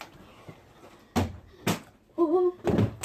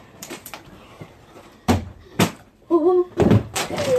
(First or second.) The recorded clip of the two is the first